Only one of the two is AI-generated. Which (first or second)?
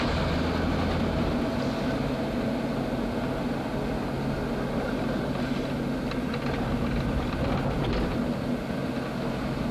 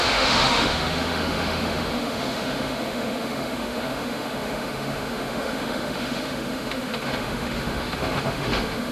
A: second